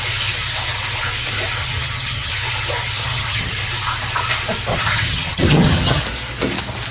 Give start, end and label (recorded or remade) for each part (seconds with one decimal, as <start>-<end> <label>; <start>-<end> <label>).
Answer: 0.0-1.6 recorded; 1.6-2.3 remade; 2.3-3.0 recorded; 3.0-3.5 remade; 3.5-4.7 recorded; 4.7-6.0 remade; 6.0-6.9 recorded